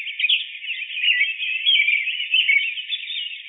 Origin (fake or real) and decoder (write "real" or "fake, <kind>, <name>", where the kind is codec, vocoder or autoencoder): real